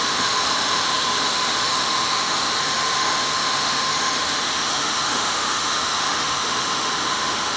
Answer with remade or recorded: remade